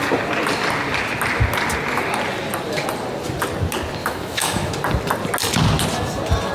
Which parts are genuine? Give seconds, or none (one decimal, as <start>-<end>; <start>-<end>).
0.0-4.0; 4.7-6.5